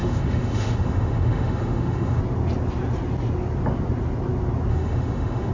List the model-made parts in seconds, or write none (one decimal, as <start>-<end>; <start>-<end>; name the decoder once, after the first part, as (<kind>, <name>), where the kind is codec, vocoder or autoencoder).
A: 0.0-2.2 (autoencoder, DAC-VAE); 4.7-5.5